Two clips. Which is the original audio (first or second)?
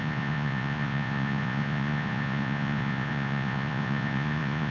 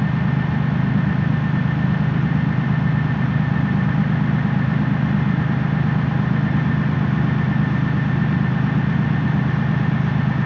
second